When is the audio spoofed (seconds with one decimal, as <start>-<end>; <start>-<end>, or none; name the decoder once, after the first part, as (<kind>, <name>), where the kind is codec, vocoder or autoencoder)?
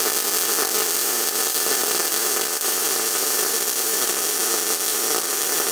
1.0-4.3 (vocoder, BigVGAN v2); 4.9-5.7